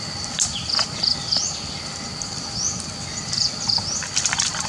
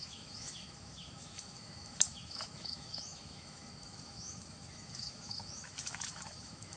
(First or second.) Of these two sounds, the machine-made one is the second